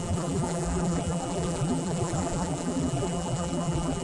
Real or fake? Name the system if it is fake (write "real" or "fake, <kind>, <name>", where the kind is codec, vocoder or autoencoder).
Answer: fake, vocoder, BigVGAN v2